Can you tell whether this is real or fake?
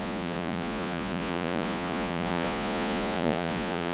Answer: fake